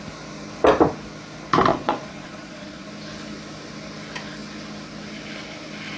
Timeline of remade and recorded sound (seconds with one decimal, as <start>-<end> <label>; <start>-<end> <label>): 0.0-1.7 recorded; 1.7-2.9 remade; 2.9-6.0 recorded